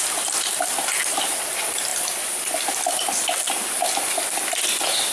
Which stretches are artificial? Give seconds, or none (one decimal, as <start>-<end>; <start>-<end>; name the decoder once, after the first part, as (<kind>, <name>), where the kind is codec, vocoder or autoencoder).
1.9-3.1 (vocoder, BigVGAN v2)